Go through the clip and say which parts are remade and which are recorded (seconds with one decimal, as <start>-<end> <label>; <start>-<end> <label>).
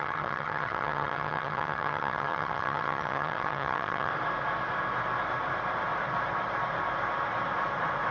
0.0-4.1 remade; 4.1-8.1 recorded